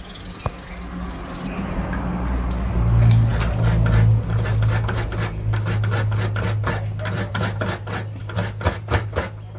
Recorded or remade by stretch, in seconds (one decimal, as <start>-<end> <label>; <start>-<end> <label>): 0.0-8.2 recorded; 8.2-9.0 remade; 9.0-9.6 recorded